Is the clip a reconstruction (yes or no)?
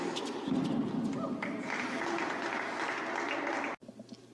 no